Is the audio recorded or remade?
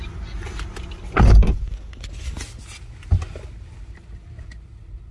recorded